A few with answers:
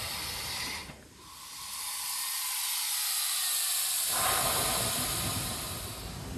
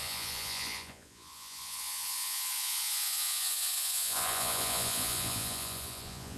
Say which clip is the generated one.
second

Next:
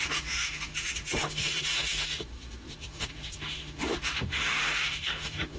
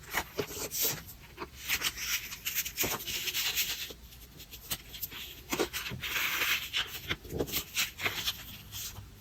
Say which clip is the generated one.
first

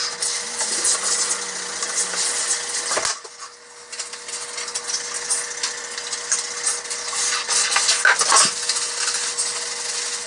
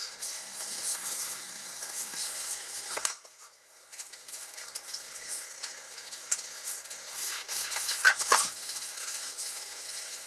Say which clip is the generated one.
second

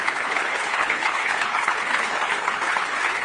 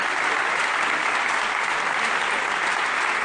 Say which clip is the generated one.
first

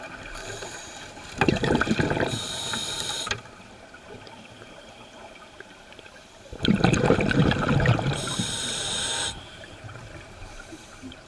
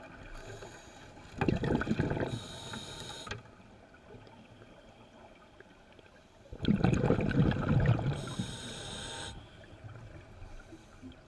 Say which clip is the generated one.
first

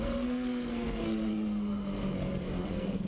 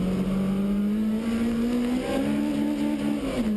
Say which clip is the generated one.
first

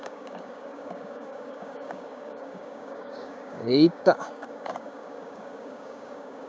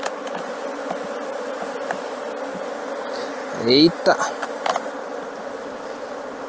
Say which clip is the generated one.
first